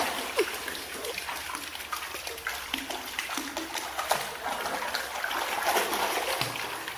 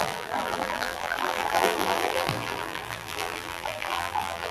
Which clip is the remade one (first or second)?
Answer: second